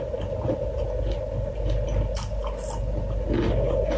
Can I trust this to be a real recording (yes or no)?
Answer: yes